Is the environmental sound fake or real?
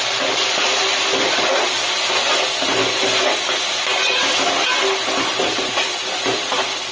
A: real